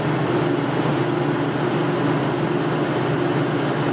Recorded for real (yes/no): yes